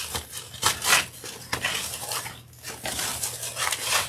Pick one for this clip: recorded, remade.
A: recorded